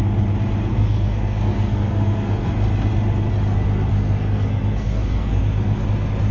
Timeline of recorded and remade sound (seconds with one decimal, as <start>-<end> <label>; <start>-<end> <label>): 0.0-0.7 recorded; 0.7-2.5 remade; 2.5-3.9 recorded; 3.9-5.8 remade; 5.8-6.3 recorded